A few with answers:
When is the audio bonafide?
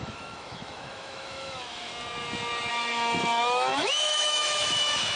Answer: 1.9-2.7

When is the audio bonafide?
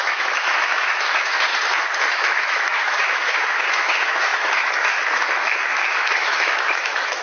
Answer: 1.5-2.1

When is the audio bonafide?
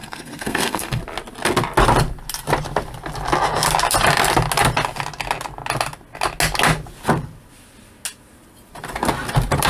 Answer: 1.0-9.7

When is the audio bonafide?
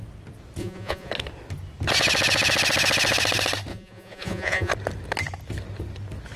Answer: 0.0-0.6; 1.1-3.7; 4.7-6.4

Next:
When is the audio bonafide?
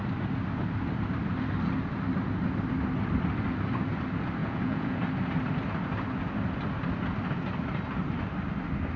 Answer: 0.0-4.4; 5.0-9.0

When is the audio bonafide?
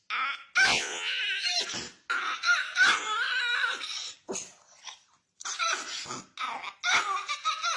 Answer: 0.0-0.7; 1.2-7.8